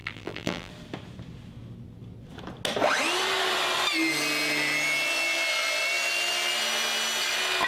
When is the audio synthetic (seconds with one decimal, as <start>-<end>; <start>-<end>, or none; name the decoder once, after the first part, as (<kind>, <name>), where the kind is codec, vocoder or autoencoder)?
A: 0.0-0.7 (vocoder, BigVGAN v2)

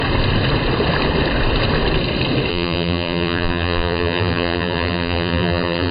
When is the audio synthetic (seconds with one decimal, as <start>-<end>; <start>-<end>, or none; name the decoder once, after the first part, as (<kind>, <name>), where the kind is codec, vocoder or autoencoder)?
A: 2.5-5.9 (vocoder, BigVGAN v2)

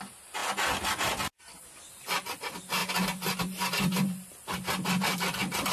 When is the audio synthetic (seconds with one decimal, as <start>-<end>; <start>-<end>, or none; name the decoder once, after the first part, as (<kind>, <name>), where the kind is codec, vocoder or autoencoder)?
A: 0.0-0.4 (vocoder, BigVGAN v2); 1.6-2.8; 3.4-5.7

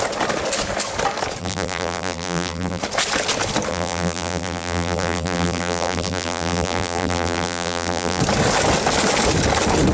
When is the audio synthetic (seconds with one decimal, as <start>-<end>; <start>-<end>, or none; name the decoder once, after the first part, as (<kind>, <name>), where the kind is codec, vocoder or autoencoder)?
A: 1.4-2.8 (vocoder, BigVGAN v2); 3.7-8.2